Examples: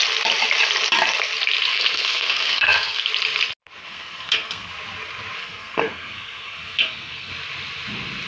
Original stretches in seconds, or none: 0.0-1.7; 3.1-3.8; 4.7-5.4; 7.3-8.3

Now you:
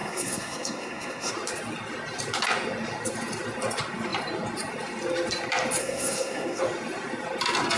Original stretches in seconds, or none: 1.3-5.8; 6.6-7.8

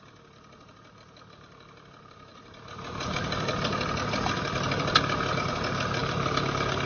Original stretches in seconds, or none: 0.0-6.9

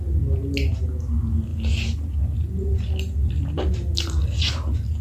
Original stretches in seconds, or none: 0.0-5.0

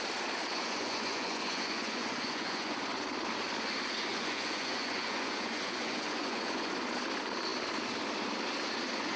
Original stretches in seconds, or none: 0.0-0.5; 2.8-4.1; 6.7-9.2